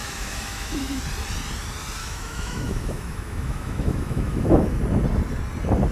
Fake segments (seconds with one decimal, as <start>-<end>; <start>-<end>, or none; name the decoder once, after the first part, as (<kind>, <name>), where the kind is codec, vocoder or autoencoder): 0.0-1.0 (autoencoder, DAC-VAE); 2.0-4.8

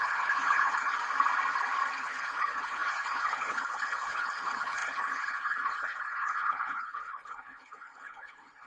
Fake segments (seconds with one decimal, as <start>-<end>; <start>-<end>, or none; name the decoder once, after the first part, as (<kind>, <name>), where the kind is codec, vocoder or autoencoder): 0.0-0.9 (codec, HILCodec); 2.0-8.7

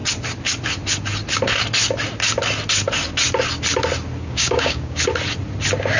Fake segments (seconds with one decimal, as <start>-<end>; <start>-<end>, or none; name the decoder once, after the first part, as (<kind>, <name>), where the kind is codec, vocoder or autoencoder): 4.2-5.0 (codec, DAC)

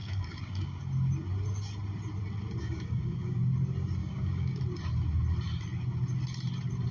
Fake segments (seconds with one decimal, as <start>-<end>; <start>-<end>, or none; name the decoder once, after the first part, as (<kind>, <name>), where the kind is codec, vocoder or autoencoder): 0.0-0.8 (codec, DAC); 2.6-3.4; 4.0-4.6

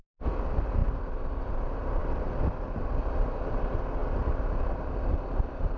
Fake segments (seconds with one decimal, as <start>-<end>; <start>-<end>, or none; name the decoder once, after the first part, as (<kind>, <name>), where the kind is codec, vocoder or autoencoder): none

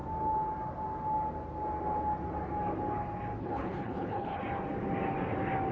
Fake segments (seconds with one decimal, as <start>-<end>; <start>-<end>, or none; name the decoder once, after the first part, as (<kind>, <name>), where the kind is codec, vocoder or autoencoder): 3.4-4.4 (codec, HILCodec)